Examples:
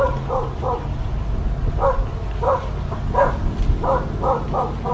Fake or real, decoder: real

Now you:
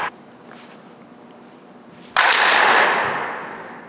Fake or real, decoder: real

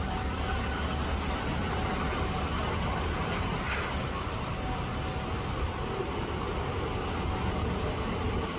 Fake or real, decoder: real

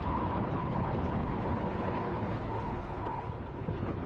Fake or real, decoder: fake, codec, HILCodec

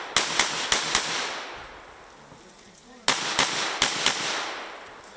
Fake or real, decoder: real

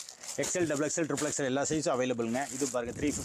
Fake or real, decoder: real